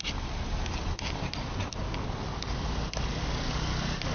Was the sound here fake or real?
real